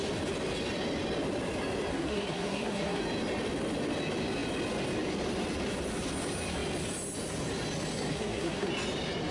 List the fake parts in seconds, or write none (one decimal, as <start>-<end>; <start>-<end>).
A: 1.9-3.0; 8.1-8.7